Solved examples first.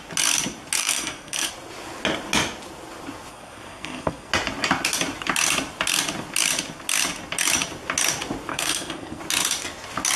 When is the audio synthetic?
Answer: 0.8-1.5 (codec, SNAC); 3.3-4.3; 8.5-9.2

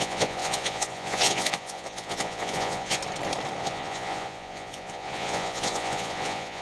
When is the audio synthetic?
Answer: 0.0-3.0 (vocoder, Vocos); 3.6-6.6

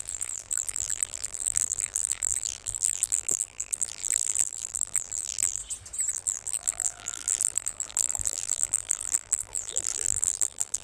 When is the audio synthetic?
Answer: 0.0-5.6 (vocoder, BigVGAN v2); 6.1-10.8

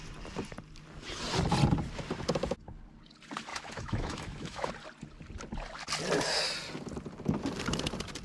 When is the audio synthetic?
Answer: 3.5-4.7 (autoencoder, DAC-VAE)

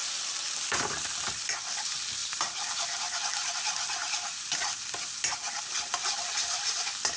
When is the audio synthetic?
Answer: 0.0-1.8 (vocoder, BigVGAN v2); 2.2-3.5; 4.0-5.1; 6.0-6.8

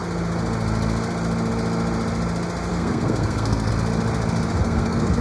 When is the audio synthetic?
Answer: 2.7-3.7 (codec, SNAC); 4.6-5.2

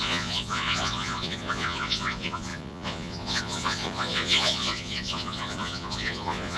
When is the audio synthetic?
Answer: 0.0-6.6 (vocoder, Vocos)